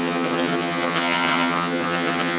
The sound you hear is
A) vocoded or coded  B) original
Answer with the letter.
A